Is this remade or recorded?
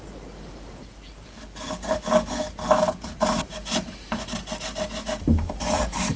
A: recorded